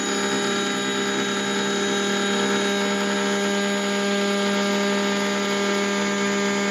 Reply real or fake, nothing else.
real